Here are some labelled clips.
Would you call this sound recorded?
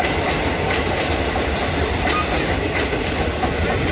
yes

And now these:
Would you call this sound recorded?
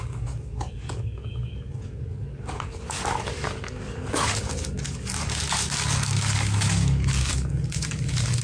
no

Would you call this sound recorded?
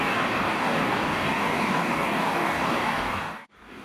no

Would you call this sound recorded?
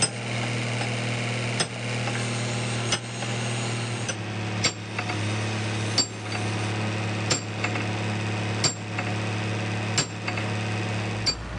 yes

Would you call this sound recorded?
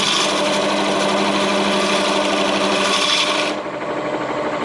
yes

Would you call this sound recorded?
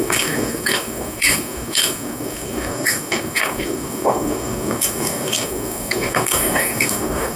no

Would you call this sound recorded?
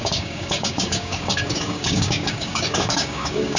no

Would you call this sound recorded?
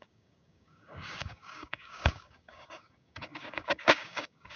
no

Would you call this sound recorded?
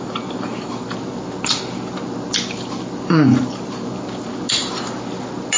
yes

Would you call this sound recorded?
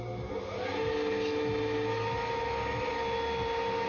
yes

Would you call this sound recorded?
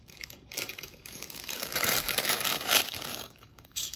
no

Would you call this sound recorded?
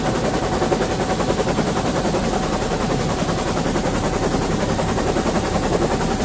yes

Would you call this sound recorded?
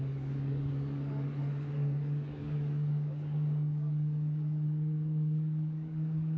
no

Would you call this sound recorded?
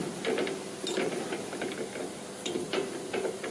yes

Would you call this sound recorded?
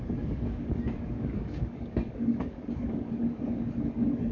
no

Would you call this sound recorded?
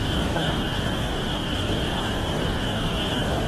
no